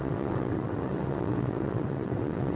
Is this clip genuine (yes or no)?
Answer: no